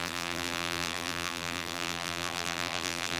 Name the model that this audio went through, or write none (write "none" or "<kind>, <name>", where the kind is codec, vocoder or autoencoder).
vocoder, BigVGAN v2